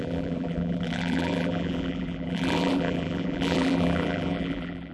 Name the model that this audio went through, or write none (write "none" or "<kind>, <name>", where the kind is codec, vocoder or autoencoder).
vocoder, BigVGAN v2